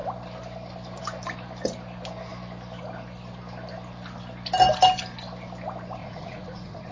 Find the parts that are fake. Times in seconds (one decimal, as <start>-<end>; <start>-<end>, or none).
6.0-6.9